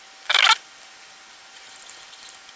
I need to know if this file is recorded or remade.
recorded